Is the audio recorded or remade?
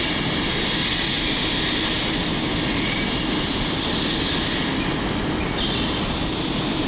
recorded